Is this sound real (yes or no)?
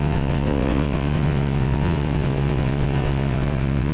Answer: no